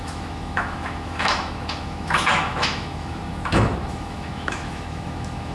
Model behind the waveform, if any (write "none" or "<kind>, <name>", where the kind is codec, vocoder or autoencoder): autoencoder, DAC-VAE